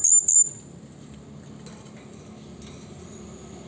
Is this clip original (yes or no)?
yes